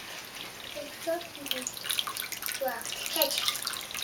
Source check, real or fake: real